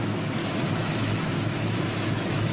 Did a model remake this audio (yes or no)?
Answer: yes